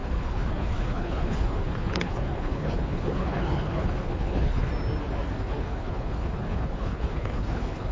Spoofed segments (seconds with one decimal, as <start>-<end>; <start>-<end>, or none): 0.0-4.7; 5.4-7.9